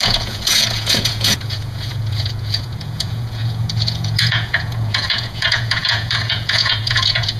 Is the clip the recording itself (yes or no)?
no